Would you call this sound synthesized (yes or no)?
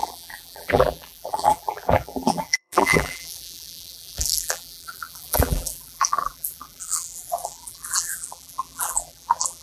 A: yes